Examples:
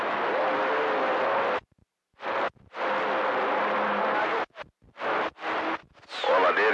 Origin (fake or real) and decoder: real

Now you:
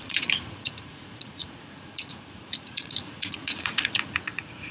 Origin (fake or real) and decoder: fake, vocoder, Vocos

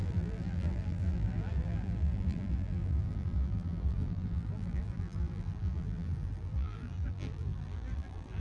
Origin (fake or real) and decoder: fake, vocoder, BigVGAN v2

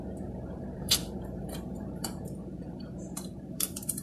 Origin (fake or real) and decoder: fake, vocoder, BigVGAN v2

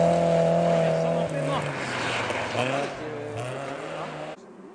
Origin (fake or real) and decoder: real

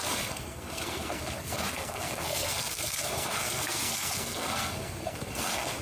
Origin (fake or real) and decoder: fake, codec, SNAC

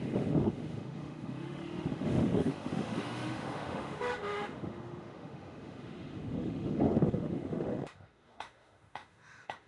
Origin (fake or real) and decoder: fake, autoencoder, DAC-VAE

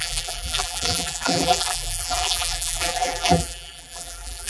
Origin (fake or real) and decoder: fake, vocoder, BigVGAN v2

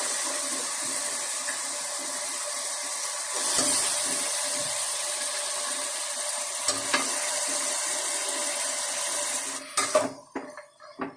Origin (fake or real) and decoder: real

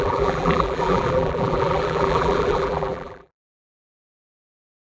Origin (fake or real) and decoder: fake, vocoder, BigVGAN v2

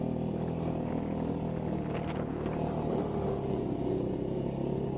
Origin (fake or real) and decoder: real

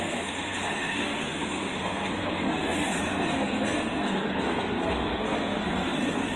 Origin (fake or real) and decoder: fake, codec, SNAC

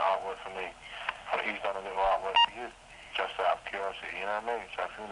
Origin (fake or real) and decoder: real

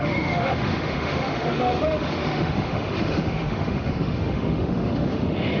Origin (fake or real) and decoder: fake, autoencoder, DAC-VAE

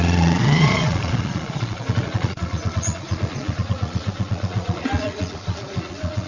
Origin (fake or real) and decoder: fake, vocoder, Vocos